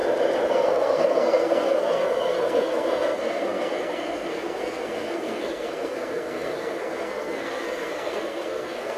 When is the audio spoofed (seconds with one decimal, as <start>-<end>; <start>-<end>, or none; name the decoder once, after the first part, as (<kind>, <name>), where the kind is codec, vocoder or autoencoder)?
0.5-9.0 (codec, SNAC)